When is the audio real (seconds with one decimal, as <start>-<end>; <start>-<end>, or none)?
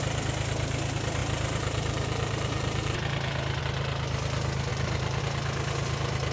0.0-1.2; 3.6-4.7; 5.2-6.3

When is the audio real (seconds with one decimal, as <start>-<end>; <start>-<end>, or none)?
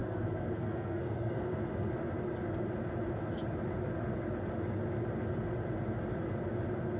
1.9-7.0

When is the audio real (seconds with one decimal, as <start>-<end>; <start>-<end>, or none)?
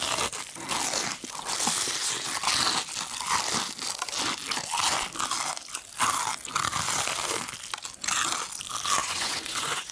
0.0-9.0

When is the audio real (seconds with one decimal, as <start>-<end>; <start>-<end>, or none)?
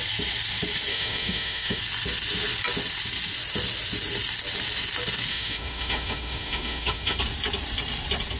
0.0-0.9; 1.8-5.3; 7.2-8.4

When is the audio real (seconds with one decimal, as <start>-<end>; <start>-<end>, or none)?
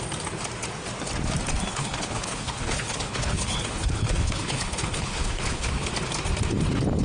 0.0-1.7; 5.9-7.0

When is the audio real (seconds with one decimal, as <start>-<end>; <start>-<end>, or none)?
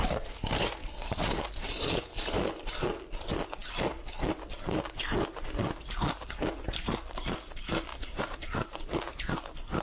0.0-7.9; 8.8-9.8